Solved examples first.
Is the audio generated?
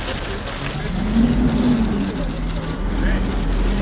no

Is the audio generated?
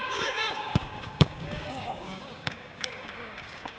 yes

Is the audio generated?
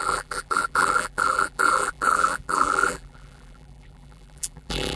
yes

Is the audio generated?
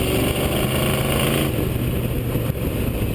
no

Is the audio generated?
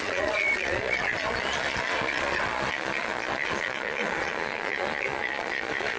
yes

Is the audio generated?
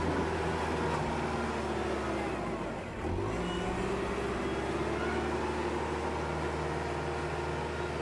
no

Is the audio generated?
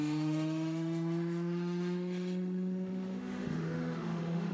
yes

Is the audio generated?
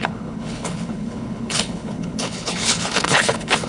yes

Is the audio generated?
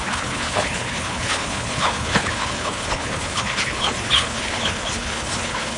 yes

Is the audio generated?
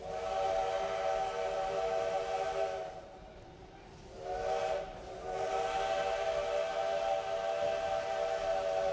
no